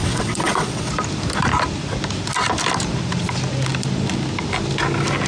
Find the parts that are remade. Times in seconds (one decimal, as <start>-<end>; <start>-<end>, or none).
0.0-0.9